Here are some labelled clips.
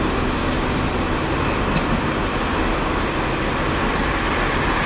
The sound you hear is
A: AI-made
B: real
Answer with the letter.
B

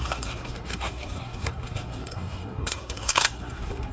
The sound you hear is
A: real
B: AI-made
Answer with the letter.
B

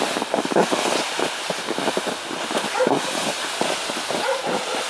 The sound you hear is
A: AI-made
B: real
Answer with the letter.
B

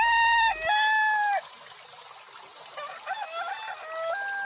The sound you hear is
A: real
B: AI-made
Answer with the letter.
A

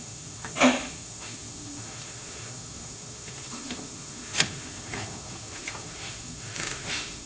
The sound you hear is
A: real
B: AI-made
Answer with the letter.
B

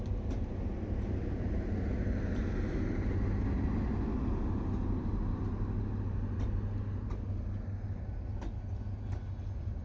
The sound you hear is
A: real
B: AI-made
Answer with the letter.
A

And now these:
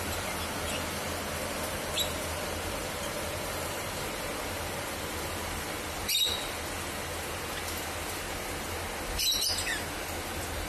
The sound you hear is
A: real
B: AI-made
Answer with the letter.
A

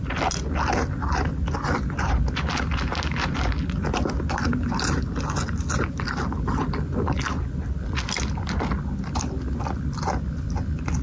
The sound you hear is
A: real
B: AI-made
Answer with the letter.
A